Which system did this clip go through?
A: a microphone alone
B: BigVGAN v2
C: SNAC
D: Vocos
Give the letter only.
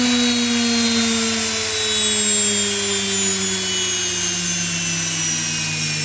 A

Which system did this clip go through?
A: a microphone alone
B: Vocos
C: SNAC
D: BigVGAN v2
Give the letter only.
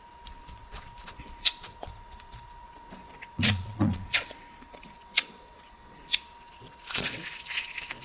B